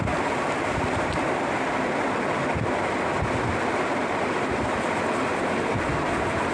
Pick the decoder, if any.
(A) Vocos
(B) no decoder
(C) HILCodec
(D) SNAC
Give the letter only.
B